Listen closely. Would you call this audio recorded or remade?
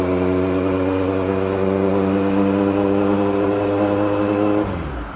recorded